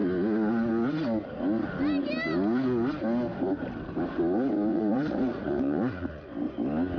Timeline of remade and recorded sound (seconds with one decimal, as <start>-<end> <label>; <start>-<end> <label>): 0.0-4.7 recorded; 4.7-6.3 remade; 6.3-7.0 recorded